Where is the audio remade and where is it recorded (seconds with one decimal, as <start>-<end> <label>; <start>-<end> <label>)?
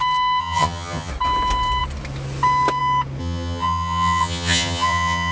0.0-0.4 recorded; 0.4-1.1 remade; 1.1-3.2 recorded; 3.2-5.3 remade